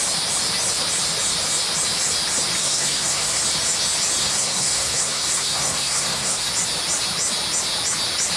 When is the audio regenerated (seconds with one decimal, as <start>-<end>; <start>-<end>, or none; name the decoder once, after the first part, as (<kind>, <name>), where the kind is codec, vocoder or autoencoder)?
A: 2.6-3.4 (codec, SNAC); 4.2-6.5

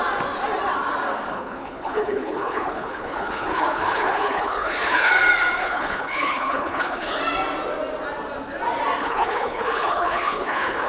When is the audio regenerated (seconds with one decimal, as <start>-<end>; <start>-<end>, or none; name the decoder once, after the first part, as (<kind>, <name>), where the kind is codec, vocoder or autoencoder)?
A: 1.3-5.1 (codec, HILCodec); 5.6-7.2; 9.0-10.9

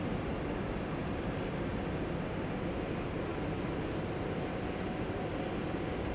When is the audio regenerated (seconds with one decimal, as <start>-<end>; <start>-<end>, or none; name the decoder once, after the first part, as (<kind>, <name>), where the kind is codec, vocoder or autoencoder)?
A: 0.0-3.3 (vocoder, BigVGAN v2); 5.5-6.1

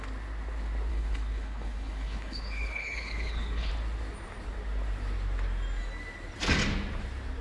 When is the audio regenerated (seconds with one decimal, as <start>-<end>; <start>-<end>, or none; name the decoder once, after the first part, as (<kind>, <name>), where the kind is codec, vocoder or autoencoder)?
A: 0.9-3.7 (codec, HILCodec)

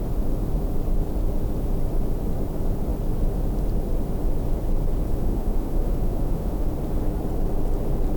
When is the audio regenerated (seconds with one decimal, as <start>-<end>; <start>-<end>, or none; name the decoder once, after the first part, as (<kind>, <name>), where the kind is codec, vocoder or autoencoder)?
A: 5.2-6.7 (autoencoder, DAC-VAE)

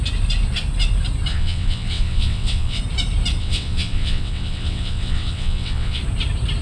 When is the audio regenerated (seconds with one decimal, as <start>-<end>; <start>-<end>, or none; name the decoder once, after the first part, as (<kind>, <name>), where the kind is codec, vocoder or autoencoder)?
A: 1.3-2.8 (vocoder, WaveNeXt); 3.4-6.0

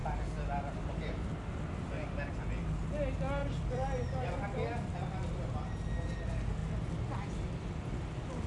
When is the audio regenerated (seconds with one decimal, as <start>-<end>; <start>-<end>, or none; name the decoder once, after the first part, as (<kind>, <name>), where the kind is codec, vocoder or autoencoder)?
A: none

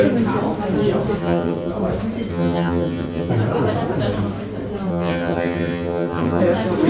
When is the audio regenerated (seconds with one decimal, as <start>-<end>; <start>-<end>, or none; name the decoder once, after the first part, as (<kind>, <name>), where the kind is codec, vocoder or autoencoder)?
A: 1.2-1.7 (vocoder, HiFi-GAN); 2.3-3.3; 4.9-6.4